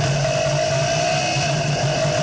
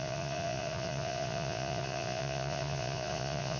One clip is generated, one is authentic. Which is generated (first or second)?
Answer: second